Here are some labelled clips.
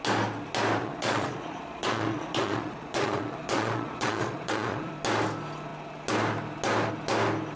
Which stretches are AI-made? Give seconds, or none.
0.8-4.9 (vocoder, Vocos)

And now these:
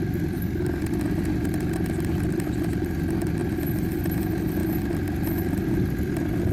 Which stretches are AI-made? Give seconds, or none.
none

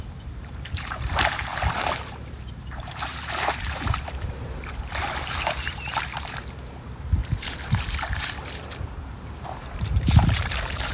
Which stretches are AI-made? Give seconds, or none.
0.0-10.9 (vocoder, BigVGAN v2)

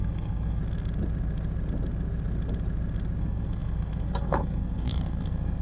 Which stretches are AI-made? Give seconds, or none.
0.0-0.6 (codec, SNAC); 3.2-5.6

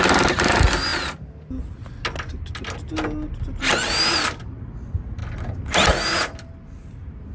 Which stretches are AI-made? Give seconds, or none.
none

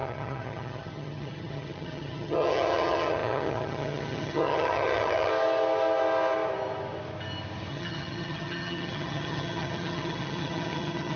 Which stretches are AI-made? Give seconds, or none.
0.0-5.3 (vocoder, HiFi-GAN); 7.7-11.2

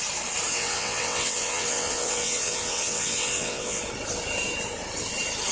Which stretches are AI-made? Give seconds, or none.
0.5-3.8 (vocoder, WaveNeXt)